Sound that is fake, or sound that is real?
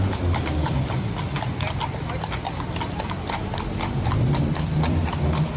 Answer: fake